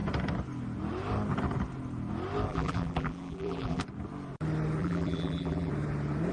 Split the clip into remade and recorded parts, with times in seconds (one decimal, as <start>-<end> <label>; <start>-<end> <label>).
0.0-2.5 recorded; 2.5-3.8 remade; 3.8-4.8 recorded; 4.8-5.7 remade; 5.7-6.3 recorded